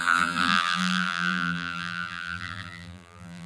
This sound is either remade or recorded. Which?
remade